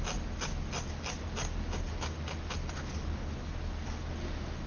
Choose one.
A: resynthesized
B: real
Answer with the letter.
B